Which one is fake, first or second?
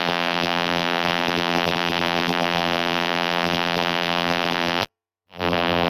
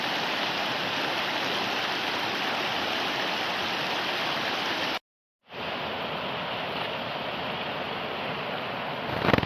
first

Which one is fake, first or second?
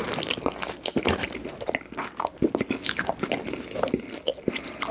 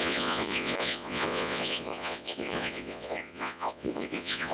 second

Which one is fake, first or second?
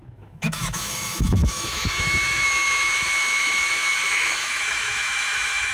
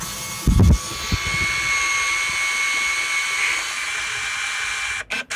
first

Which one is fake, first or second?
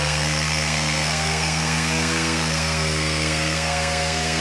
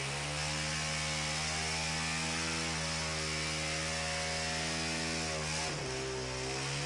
first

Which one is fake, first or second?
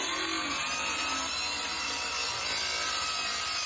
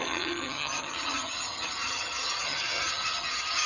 second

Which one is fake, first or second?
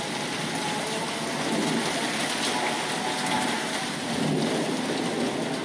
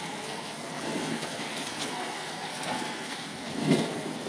second